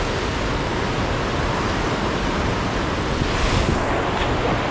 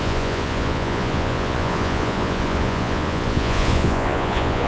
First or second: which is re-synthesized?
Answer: second